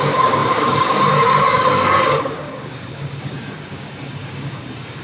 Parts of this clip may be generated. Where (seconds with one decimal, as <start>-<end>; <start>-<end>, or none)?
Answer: 0.0-5.0